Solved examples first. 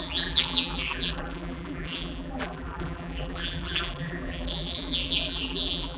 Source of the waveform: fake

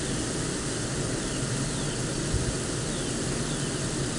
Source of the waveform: real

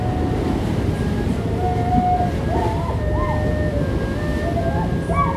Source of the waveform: real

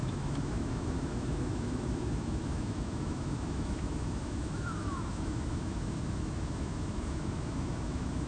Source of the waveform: fake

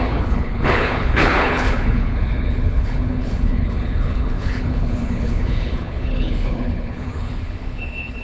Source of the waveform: fake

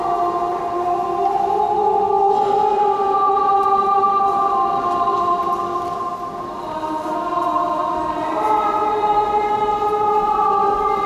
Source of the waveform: real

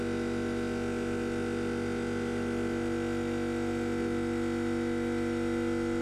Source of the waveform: real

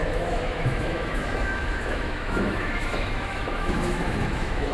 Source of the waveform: fake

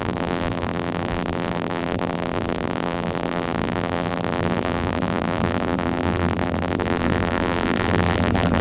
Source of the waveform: fake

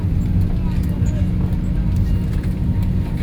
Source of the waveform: real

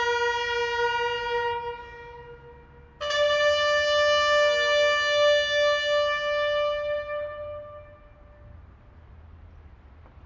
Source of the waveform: real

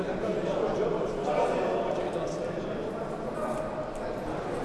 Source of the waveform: real